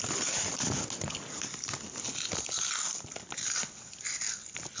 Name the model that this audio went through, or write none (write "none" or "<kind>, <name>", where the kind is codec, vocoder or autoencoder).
none